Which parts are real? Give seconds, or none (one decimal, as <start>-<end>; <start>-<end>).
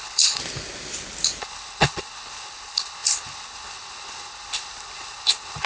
0.4-1.4